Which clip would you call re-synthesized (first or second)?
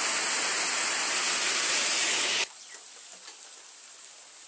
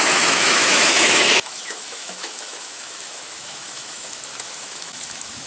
second